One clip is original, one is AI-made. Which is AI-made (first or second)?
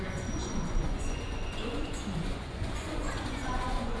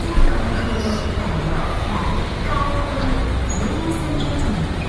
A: first